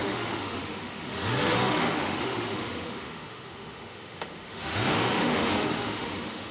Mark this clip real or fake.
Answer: fake